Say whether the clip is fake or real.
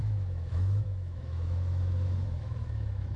fake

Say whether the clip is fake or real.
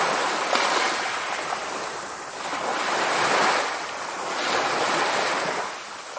real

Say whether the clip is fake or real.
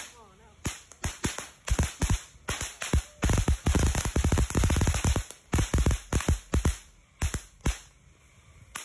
real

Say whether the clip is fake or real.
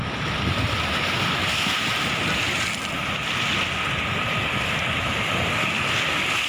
real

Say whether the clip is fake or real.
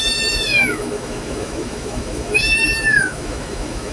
fake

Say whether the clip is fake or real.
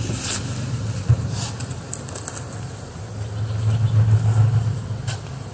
real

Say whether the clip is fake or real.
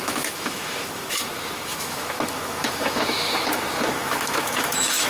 fake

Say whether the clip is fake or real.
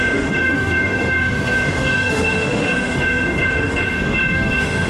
fake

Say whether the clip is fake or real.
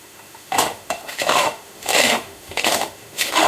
fake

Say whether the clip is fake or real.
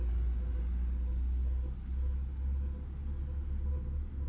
real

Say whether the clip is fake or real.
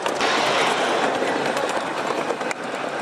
real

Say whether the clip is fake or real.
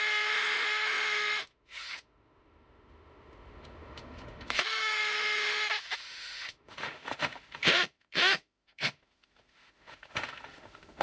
fake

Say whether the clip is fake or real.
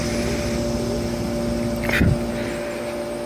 real